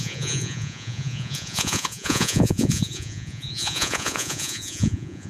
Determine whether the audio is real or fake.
fake